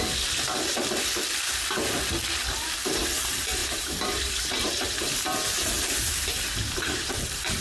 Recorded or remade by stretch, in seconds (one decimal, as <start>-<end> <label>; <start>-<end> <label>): 0.0-3.6 recorded; 3.6-7.6 remade